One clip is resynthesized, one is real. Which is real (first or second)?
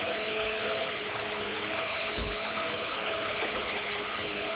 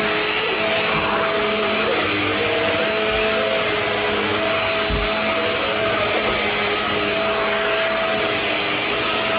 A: second